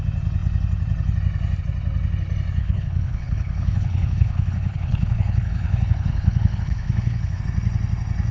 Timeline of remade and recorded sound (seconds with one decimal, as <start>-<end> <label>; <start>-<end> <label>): 0.0-2.6 recorded; 2.6-7.4 remade; 7.4-8.3 recorded